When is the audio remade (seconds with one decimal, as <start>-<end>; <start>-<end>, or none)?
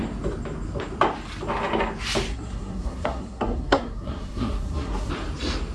2.3-5.1